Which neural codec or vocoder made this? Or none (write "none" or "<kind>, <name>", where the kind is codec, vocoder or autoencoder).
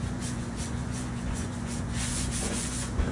vocoder, Vocos